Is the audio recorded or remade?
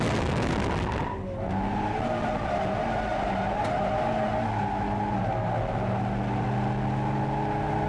recorded